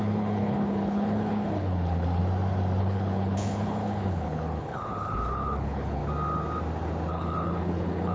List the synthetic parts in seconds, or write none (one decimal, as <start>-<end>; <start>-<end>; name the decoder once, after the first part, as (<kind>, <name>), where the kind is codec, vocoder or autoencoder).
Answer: 0.0-2.2 (codec, HILCodec); 2.8-6.0; 7.1-8.1